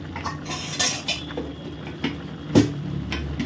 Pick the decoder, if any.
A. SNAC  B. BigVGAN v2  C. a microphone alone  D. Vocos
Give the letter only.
C